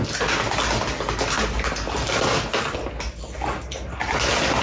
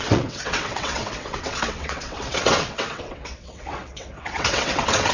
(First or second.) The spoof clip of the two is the second